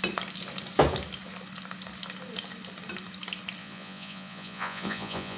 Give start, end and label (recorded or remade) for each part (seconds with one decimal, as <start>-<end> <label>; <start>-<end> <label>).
0.0-3.6 recorded; 3.6-5.4 remade